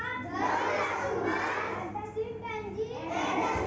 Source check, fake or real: real